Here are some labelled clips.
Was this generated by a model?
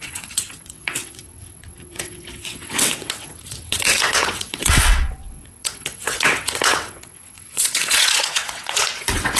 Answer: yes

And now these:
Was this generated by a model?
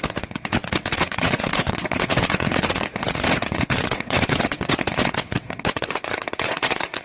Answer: yes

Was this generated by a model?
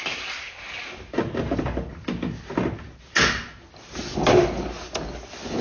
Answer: no